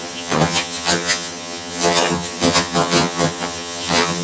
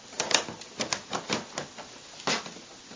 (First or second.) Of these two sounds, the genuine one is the second